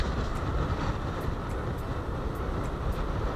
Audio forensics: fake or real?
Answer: real